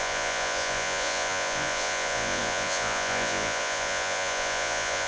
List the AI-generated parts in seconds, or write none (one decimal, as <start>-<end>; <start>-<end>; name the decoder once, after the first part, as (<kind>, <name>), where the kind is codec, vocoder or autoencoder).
0.0-5.1 (vocoder, Vocos)